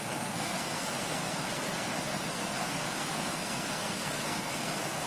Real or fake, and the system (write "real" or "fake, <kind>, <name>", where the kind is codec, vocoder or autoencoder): fake, codec, SNAC